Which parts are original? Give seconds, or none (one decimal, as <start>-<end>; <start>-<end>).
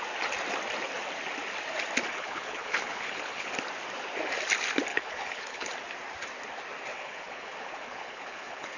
0.0-2.1; 3.5-4.9; 5.7-6.9